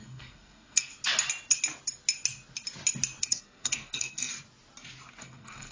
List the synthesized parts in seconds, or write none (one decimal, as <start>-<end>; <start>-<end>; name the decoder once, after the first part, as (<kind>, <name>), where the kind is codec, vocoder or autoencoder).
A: 0.0-0.9 (codec, SNAC); 3.2-4.3; 5.2-5.7